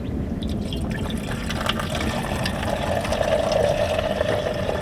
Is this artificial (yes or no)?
no